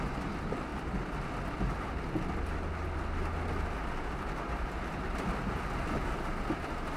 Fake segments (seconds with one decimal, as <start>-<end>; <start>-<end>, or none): none